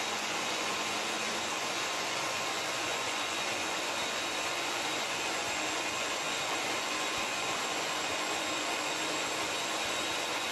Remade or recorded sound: remade